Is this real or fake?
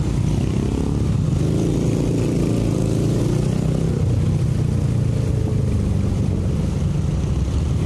real